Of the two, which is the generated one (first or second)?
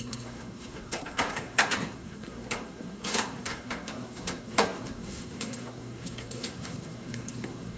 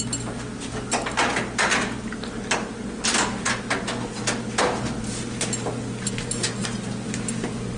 first